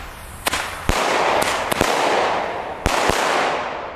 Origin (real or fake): real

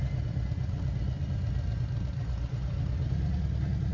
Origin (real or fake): real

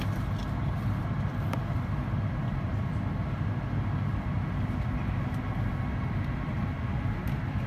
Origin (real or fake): real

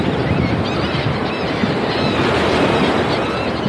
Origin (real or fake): real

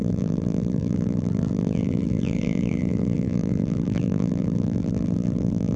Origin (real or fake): fake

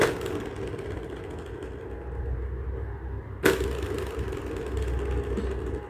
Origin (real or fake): real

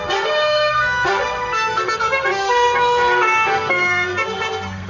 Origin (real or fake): fake